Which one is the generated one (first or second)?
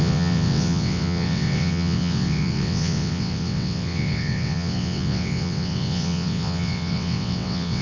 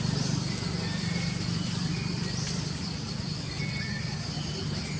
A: first